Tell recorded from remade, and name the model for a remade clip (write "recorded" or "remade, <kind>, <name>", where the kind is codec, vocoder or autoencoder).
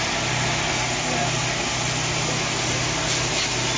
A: recorded